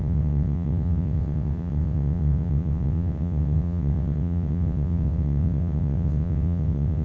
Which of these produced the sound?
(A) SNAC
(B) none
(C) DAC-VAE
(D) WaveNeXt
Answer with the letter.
D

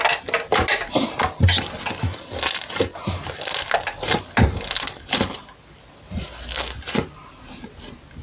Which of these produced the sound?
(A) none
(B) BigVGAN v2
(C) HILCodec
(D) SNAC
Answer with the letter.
A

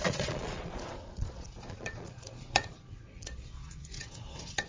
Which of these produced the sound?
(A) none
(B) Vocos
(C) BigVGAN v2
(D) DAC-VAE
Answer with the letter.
B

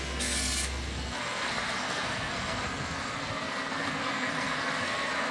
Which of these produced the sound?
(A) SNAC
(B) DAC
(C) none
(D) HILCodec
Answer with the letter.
A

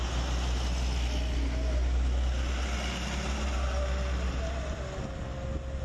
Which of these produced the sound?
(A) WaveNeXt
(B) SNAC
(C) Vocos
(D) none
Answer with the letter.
D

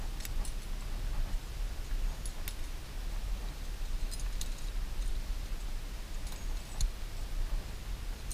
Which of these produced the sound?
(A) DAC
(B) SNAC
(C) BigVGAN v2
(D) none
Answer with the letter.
D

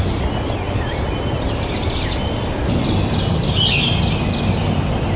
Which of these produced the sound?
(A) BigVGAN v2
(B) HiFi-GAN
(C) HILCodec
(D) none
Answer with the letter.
D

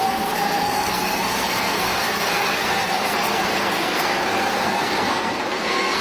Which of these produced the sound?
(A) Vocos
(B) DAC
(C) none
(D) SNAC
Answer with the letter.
D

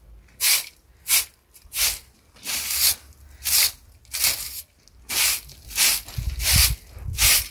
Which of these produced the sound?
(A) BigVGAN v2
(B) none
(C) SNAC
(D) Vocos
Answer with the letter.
B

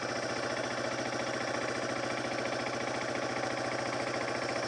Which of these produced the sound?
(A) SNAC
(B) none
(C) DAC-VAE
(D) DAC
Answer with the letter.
B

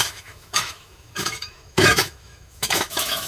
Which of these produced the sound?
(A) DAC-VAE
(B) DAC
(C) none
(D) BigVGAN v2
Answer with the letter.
A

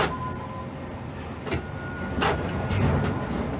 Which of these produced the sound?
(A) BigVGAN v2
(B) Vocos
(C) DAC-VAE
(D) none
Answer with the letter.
D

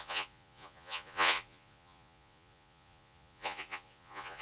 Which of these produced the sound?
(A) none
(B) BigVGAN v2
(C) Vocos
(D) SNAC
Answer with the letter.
C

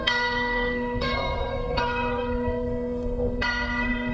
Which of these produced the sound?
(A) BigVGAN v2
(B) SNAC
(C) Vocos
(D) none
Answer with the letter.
B